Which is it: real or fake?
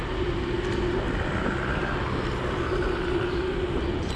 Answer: real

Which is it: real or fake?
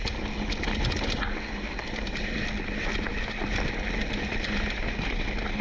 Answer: real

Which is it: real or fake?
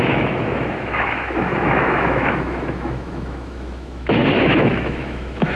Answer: fake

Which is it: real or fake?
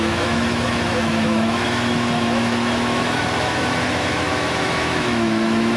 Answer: fake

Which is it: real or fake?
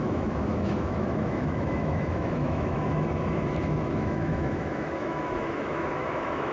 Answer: fake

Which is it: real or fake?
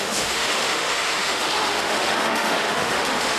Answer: fake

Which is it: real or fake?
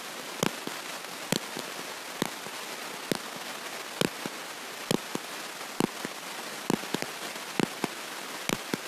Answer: real